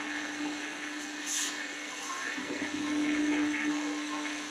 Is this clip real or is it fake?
fake